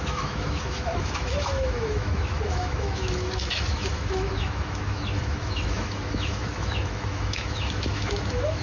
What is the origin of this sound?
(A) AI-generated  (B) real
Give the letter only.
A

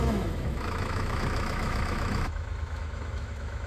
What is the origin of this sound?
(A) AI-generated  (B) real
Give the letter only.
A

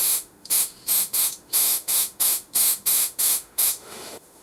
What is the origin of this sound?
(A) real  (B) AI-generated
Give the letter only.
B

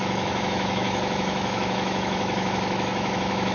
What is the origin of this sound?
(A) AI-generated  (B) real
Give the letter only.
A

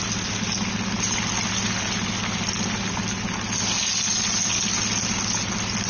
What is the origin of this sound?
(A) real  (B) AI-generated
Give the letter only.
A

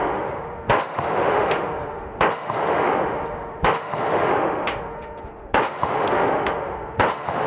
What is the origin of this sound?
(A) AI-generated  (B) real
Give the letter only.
A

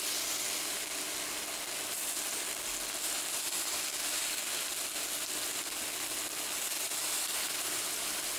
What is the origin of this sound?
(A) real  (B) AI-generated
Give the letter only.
A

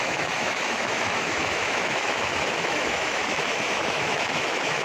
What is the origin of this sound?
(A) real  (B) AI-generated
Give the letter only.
B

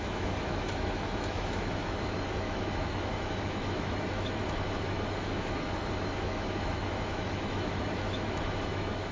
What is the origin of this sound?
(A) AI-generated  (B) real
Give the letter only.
A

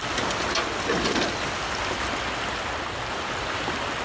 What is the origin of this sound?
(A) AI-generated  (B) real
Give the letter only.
B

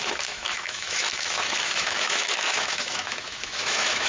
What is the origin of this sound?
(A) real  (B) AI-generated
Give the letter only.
B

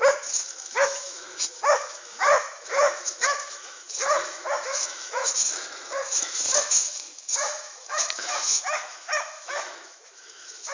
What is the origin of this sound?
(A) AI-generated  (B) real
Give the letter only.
A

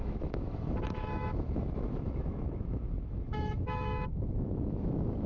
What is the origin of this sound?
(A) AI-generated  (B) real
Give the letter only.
A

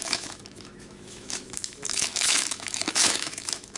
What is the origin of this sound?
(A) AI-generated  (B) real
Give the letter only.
A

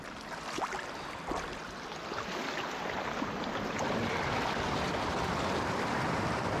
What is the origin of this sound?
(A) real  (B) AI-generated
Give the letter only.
A